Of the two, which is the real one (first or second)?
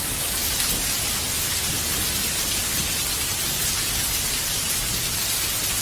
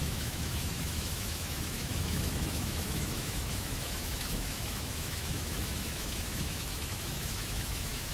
first